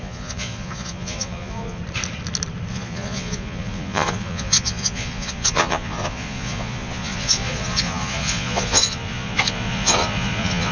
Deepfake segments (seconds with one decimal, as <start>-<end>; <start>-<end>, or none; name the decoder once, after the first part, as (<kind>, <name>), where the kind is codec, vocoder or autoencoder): 0.0-1.8 (vocoder, Vocos); 2.7-10.7